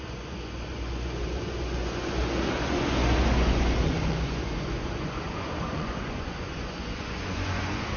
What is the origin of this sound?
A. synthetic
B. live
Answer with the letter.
A